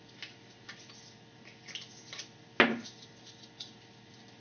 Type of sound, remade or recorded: recorded